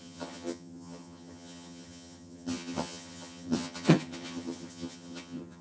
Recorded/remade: remade